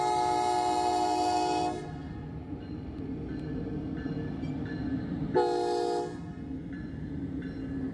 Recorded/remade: recorded